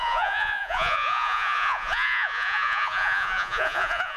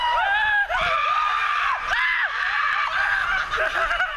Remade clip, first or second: first